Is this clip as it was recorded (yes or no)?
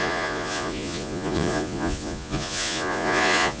no